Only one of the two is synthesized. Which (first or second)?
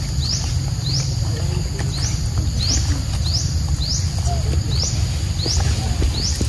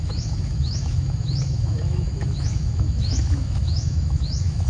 second